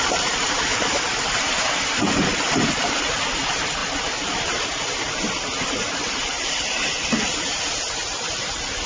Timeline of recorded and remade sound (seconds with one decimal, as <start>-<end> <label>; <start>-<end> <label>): 0.0-0.7 remade; 0.7-2.3 recorded; 2.3-8.9 remade